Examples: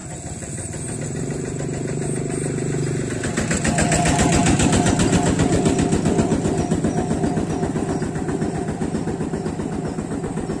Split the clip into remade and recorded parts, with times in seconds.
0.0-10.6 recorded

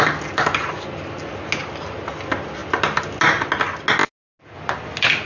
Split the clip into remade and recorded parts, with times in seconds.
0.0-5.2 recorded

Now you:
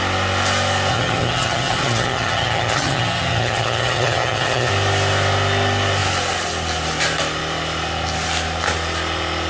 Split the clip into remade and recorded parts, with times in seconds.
0.0-0.9 recorded; 0.9-4.7 remade; 4.7-9.5 recorded

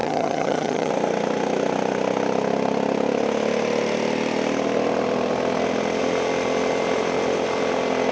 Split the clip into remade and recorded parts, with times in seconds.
0.0-0.9 remade; 0.9-8.1 recorded

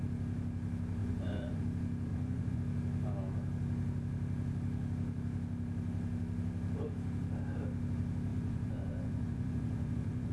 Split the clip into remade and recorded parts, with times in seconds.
0.0-1.0 recorded; 1.0-1.6 remade; 1.6-2.1 recorded; 2.1-2.6 remade; 2.6-8.3 recorded; 8.3-10.3 remade

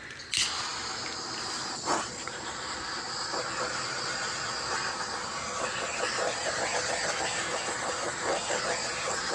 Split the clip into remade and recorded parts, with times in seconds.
0.0-0.7 recorded; 0.7-3.4 remade; 3.4-9.3 recorded

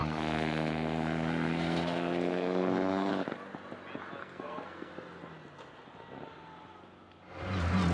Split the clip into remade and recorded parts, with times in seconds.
0.0-3.1 remade; 3.1-4.2 recorded; 4.2-4.9 remade; 4.9-7.9 recorded

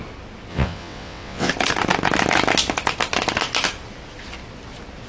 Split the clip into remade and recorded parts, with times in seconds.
0.0-0.5 recorded; 0.5-1.5 remade; 1.5-5.1 recorded